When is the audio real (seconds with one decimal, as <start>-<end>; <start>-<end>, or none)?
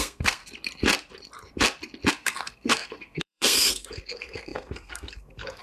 0.4-2.1